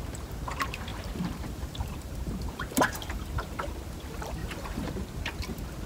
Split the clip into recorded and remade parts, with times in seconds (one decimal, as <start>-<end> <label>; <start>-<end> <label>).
0.0-0.9 recorded; 0.9-3.7 remade; 3.7-4.4 recorded; 4.4-4.9 remade; 4.9-5.9 recorded